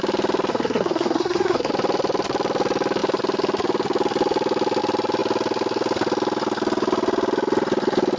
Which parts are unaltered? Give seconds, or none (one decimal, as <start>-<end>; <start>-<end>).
0.0-0.5; 1.7-8.2